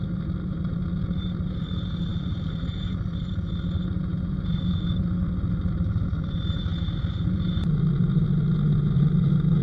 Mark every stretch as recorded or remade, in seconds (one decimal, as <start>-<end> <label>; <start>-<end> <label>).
0.0-9.6 recorded